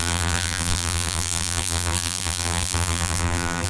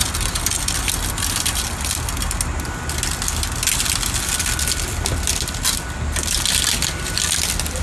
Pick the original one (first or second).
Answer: second